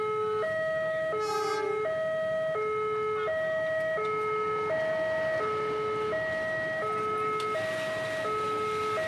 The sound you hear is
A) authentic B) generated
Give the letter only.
A